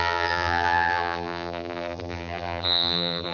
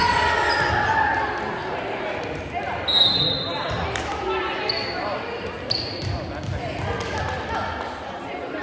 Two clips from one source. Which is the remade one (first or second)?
first